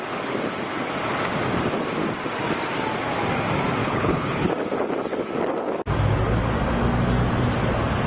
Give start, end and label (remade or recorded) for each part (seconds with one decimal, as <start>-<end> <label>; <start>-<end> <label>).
0.0-3.8 recorded; 3.8-4.5 remade; 4.5-8.1 recorded